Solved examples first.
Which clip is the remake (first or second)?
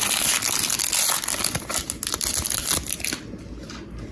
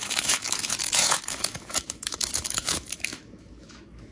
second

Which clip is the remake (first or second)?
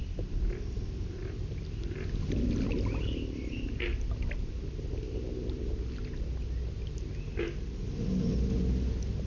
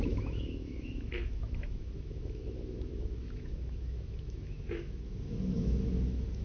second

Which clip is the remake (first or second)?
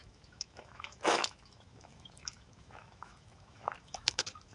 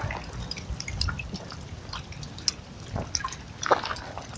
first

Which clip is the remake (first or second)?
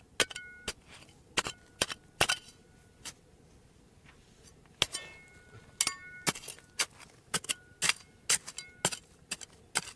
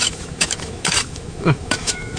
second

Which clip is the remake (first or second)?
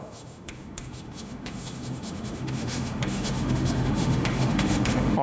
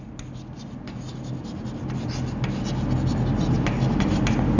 first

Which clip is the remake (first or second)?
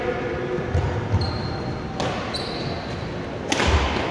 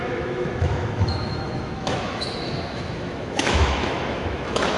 second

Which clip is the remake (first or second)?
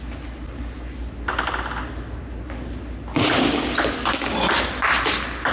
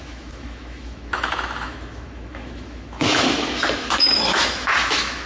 second